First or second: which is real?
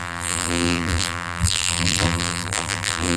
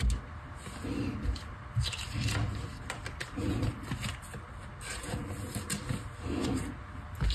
second